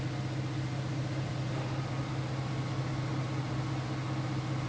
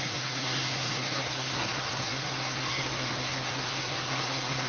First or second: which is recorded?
first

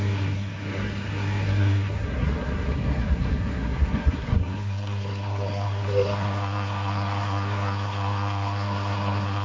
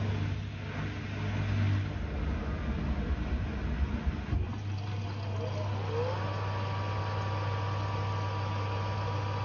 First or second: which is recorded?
second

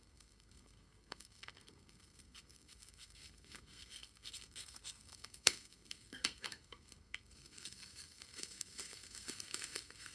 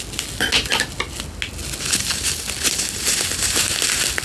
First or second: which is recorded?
second